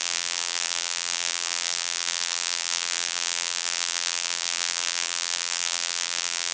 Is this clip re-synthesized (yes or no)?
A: yes